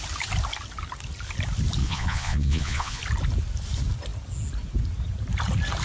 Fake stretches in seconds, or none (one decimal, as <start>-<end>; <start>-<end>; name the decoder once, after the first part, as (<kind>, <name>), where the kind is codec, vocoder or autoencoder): 1.8-3.0 (vocoder, Vocos)